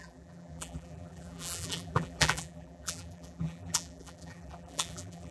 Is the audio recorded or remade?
remade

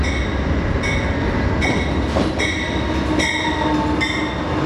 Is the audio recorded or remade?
recorded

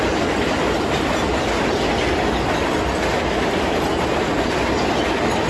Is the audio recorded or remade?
recorded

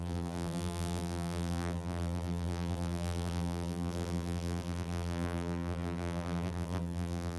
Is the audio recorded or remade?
remade